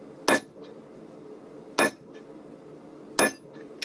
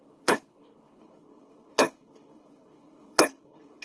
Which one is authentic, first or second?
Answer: first